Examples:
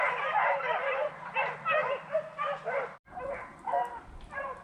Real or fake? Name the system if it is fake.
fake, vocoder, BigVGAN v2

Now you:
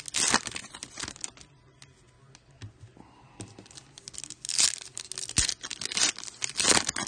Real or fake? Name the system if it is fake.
real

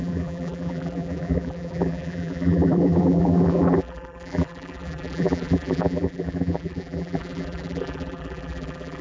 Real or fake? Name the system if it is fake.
fake, vocoder, BigVGAN v2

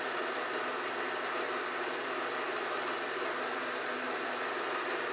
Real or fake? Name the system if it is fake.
real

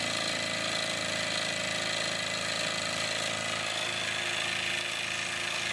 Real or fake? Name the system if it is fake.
real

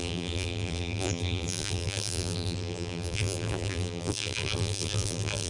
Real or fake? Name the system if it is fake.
fake, vocoder, BigVGAN v2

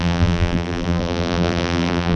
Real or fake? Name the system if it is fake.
fake, vocoder, BigVGAN v2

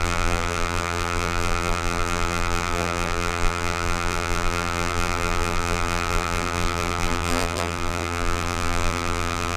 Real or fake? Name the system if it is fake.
fake, vocoder, BigVGAN v2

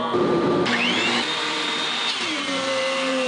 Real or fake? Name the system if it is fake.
fake, vocoder, BigVGAN v2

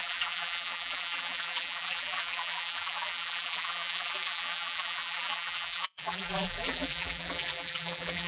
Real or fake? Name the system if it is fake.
fake, vocoder, BigVGAN v2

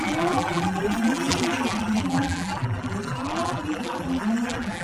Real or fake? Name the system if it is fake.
fake, vocoder, BigVGAN v2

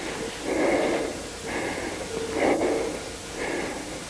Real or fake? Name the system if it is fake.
real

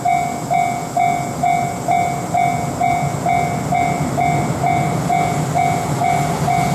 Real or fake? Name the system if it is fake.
real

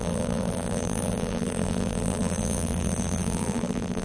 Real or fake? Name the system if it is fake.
fake, vocoder, BigVGAN v2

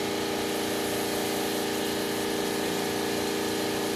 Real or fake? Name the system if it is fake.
real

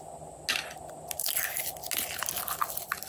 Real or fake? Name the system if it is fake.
real